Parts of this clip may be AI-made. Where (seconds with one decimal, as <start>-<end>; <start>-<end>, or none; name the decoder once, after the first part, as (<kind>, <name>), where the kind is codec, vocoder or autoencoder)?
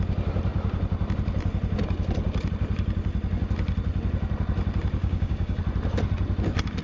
5.0-5.6 (codec, DAC)